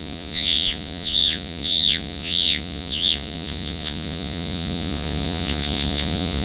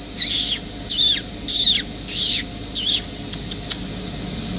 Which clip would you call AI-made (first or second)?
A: first